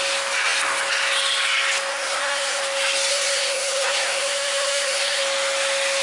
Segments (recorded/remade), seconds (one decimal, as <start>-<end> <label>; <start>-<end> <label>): 0.0-1.9 recorded; 1.9-2.6 remade; 2.6-3.1 recorded; 3.1-5.2 remade; 5.2-6.0 recorded